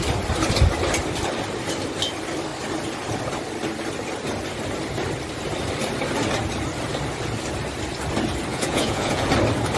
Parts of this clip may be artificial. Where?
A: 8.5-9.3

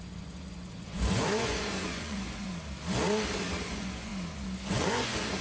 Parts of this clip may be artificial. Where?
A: 0.0-2.5; 3.5-4.1; 4.7-5.4

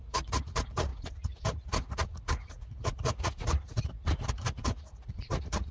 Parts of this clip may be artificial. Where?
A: 0.0-5.7

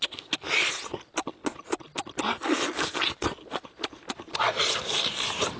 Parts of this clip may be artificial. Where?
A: none

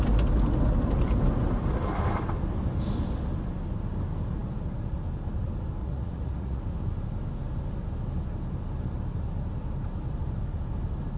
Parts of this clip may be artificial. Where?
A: 5.8-6.6

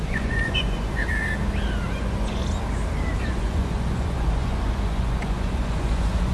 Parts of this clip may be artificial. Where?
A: 0.0-1.0; 1.9-2.4; 3.2-6.3

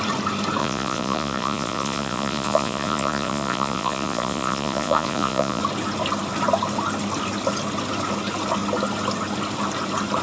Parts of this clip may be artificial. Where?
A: 0.6-5.6